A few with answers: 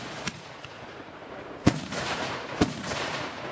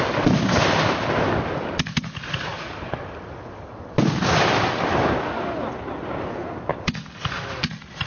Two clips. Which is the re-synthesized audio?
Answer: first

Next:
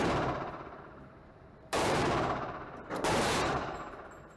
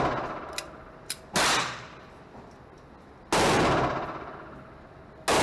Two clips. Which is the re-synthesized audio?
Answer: first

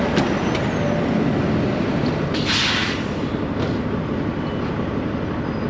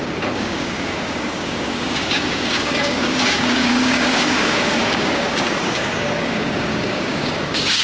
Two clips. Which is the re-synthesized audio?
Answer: second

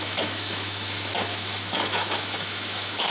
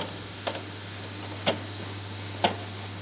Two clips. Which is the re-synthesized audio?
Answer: first